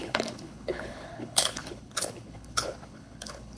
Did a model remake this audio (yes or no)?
yes